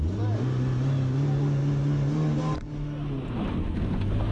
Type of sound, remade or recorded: recorded